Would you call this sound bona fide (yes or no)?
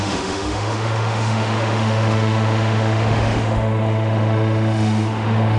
no